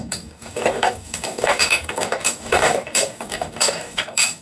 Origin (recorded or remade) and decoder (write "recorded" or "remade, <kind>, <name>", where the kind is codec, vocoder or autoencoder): remade, codec, DAC